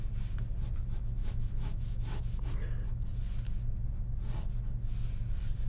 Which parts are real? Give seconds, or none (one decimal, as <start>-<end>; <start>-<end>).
0.0-1.2; 2.2-5.7